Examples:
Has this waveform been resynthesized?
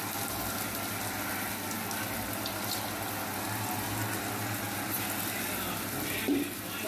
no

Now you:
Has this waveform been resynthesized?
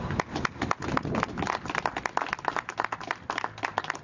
no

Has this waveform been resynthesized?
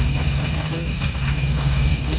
yes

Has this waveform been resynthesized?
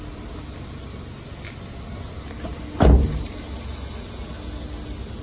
no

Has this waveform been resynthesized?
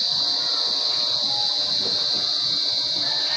no